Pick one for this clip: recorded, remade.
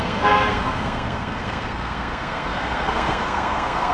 remade